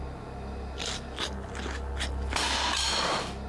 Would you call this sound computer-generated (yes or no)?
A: no